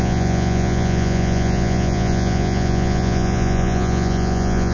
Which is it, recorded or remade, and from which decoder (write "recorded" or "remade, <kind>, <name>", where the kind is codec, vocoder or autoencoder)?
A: remade, vocoder, Vocos